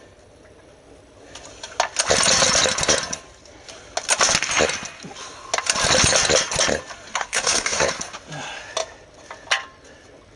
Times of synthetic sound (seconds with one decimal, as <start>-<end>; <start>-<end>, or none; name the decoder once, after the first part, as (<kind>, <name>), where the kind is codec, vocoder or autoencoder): 7.1-7.9 (codec, SNAC)